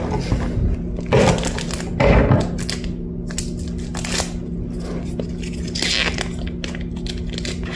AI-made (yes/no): no